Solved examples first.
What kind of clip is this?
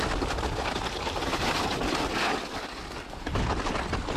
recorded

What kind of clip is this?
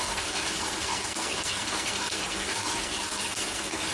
remade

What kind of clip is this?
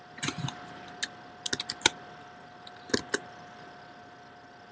recorded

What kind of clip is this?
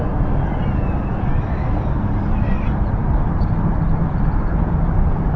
recorded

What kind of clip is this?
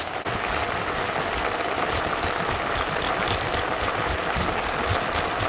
recorded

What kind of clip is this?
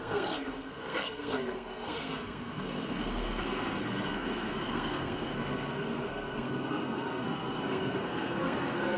remade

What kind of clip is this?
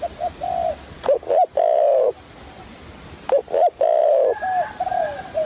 recorded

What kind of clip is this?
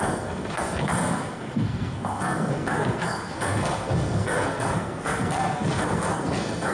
remade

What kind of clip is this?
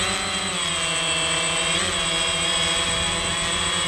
recorded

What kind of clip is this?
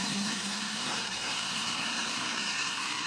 remade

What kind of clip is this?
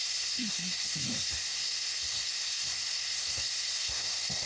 remade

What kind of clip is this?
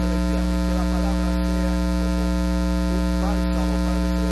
recorded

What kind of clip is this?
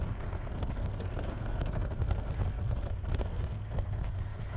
remade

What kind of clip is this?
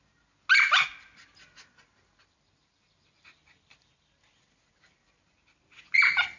recorded